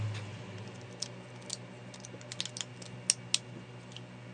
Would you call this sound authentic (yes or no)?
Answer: yes